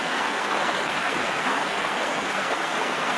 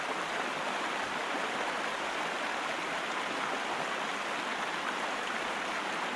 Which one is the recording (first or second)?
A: second